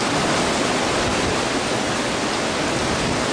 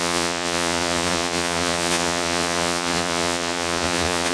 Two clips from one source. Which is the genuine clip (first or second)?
first